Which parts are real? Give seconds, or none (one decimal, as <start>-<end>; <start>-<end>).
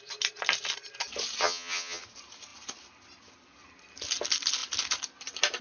0.0-1.4; 2.0-5.6